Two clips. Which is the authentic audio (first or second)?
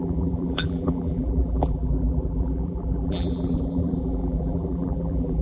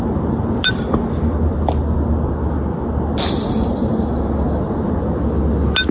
second